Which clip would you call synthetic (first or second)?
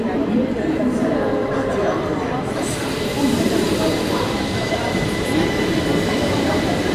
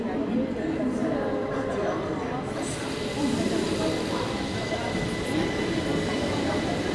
first